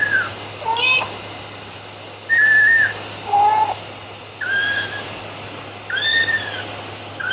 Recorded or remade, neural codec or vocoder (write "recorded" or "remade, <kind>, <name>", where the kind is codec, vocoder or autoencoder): recorded